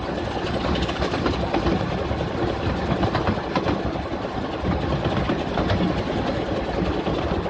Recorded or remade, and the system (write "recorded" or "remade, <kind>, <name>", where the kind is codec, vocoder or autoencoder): recorded